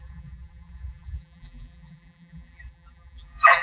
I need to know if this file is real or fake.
fake